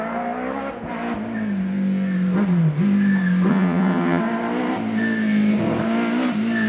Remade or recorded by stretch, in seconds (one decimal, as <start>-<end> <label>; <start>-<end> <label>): 0.0-3.5 recorded; 3.5-4.2 remade; 4.2-6.7 recorded